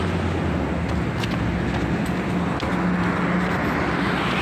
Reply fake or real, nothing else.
real